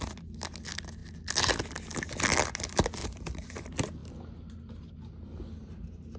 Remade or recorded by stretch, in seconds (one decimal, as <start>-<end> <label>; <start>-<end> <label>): 0.0-3.0 recorded; 3.0-3.5 remade; 3.5-6.2 recorded